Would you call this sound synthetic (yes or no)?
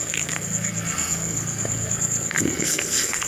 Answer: yes